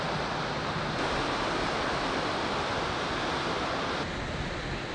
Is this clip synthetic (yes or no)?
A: no